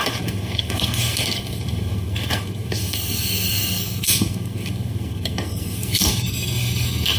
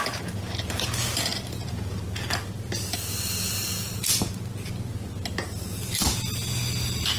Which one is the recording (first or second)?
second